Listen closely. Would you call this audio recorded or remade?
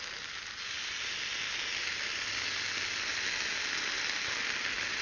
recorded